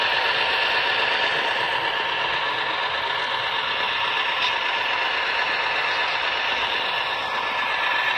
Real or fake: real